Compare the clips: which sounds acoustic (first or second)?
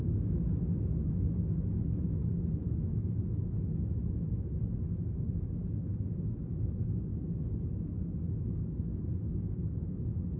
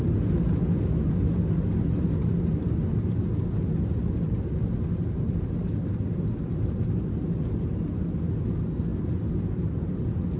second